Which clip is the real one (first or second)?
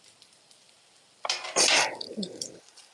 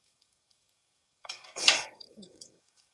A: first